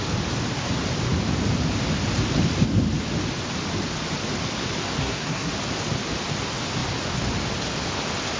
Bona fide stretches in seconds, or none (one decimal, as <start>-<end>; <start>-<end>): 0.0-5.0; 5.5-8.4